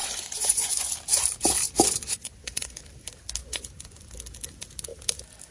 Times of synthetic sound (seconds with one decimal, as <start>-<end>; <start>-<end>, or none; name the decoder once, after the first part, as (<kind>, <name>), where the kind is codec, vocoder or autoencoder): 0.0-0.9 (vocoder, Vocos); 2.0-2.8; 3.4-4.0